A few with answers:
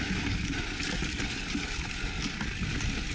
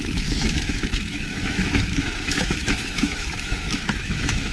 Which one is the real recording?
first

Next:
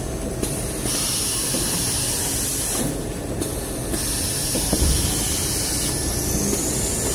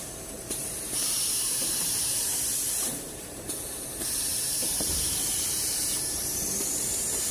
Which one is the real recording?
first